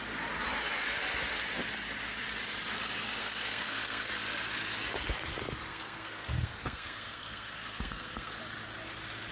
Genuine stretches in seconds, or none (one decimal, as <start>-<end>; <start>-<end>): 0.0-3.2; 4.1-5.7; 8.4-9.3